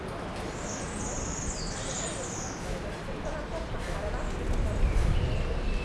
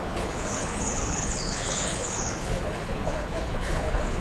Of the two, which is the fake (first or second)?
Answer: second